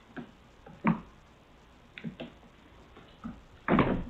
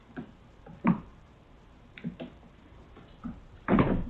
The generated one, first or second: second